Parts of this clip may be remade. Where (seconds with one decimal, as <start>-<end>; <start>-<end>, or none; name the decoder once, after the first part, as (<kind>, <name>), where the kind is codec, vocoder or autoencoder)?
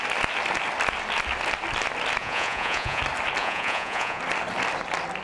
2.2-3.0 (vocoder, Vocos); 3.4-4.2